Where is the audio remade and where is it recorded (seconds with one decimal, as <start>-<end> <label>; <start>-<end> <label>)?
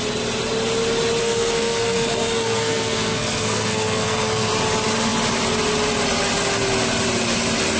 0.0-1.2 recorded; 1.2-4.5 remade; 4.5-7.8 recorded